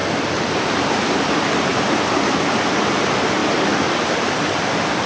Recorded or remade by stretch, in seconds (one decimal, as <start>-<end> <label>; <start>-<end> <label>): 0.0-2.4 remade; 2.4-3.4 recorded; 3.4-5.1 remade